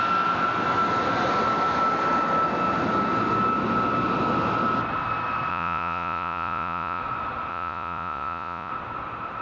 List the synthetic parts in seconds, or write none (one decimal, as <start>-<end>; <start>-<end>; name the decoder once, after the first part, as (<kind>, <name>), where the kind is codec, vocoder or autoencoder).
5.5-7.0 (vocoder, Vocos); 7.5-8.7